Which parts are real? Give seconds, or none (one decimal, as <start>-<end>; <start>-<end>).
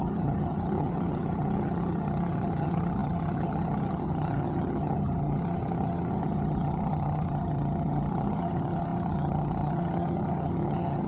none